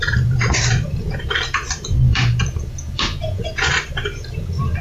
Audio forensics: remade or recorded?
remade